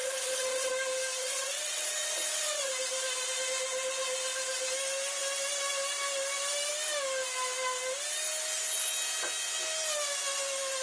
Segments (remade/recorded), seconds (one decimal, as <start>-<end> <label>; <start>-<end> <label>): 0.0-0.7 remade; 0.7-1.2 recorded; 1.2-2.7 remade; 2.7-10.8 recorded